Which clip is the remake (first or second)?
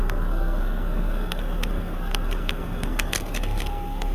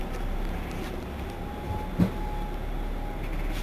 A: first